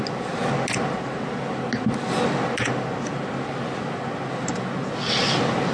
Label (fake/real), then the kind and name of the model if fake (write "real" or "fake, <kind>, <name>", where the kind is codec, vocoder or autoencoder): real